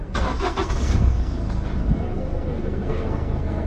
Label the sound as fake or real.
fake